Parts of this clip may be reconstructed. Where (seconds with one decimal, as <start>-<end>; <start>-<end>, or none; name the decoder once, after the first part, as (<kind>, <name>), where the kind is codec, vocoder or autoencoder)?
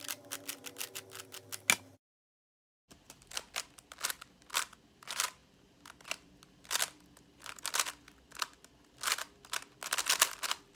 2.5-3.6 (vocoder, BigVGAN v2); 5.4-7.6